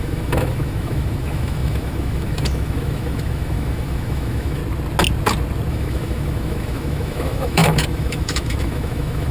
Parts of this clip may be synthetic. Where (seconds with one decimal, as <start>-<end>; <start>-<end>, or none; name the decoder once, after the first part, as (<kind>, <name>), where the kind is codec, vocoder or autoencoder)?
0.0-4.6 (autoencoder, DAC-VAE); 5.7-9.3